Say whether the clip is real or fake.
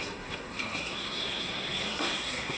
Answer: fake